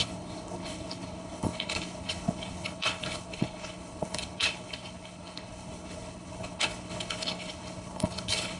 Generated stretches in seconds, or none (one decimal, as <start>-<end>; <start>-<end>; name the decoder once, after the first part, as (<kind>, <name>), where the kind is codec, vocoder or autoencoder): 0.0-8.6 (codec, HILCodec)